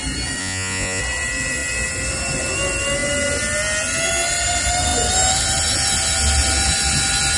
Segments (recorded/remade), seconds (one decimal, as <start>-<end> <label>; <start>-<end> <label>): 0.0-0.4 recorded; 0.4-1.0 remade; 1.0-7.4 recorded